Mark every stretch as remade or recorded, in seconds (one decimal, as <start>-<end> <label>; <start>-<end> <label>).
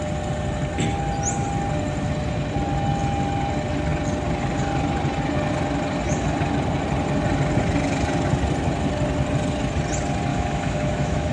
0.0-10.3 recorded; 10.3-11.3 remade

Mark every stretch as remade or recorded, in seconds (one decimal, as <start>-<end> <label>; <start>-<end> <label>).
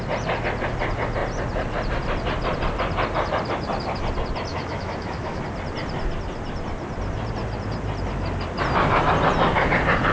0.0-4.5 recorded; 4.5-5.4 remade; 5.4-10.1 recorded